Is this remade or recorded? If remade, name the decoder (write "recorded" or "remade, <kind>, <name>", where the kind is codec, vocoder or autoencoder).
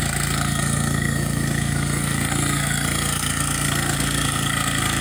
remade, codec, SNAC